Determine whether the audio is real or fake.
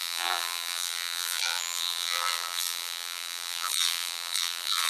fake